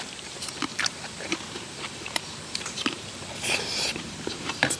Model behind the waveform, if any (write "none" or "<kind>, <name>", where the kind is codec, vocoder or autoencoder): vocoder, BigVGAN v2